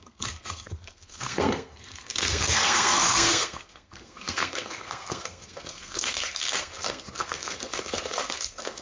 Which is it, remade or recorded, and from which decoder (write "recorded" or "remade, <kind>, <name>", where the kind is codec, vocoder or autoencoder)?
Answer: remade, codec, SNAC